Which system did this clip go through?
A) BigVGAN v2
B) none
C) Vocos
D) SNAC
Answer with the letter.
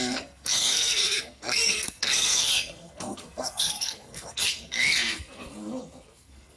D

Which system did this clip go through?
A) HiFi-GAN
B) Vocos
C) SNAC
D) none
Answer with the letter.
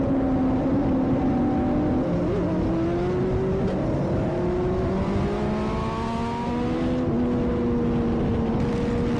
D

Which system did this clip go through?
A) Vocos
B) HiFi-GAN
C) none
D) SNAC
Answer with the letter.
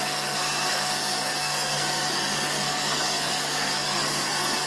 D